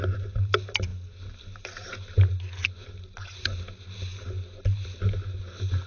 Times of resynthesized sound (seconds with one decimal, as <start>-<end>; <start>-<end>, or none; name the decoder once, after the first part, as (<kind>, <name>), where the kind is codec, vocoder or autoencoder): none

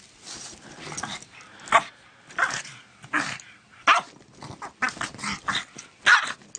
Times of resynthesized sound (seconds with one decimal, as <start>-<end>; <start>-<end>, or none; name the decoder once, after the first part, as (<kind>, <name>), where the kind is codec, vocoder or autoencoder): none

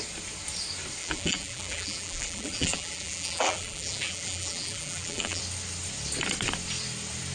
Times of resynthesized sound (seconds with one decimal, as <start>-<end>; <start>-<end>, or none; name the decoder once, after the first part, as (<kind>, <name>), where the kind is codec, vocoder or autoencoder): 1.0-5.4 (vocoder, BigVGAN v2)

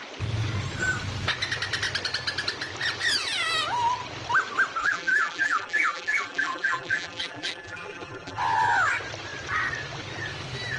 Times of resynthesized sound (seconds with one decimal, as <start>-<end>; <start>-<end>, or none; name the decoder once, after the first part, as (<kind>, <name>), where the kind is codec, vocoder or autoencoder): 4.8-8.4 (vocoder, BigVGAN v2)

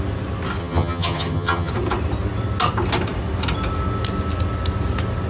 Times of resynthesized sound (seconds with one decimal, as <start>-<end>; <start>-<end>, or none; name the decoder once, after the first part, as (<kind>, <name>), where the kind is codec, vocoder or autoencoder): 0.6-1.7 (vocoder, HiFi-GAN)